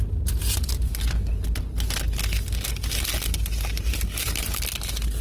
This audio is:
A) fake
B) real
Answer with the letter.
B